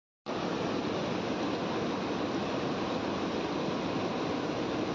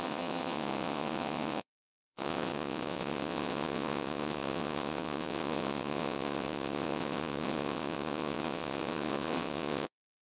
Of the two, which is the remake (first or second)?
second